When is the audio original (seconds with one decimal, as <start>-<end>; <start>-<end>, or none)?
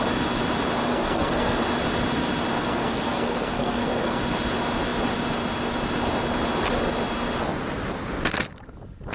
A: 0.0-0.9; 1.6-2.6; 4.2-9.1